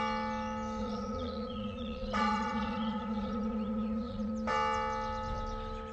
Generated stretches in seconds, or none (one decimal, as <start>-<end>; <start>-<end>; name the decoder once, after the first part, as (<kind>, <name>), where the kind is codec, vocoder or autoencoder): 0.8-4.3 (vocoder, Vocos)